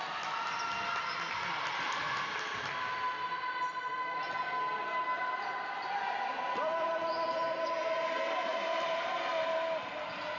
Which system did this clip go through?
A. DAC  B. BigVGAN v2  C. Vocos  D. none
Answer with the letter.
D